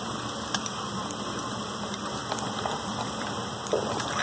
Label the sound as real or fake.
real